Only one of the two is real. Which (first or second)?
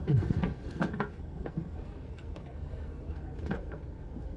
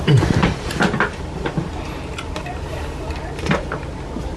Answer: second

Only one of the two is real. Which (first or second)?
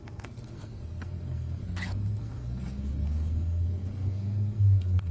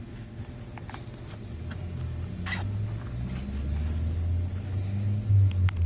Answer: second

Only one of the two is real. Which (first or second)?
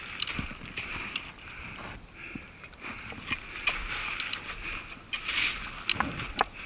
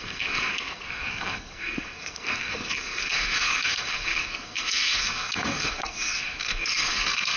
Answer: first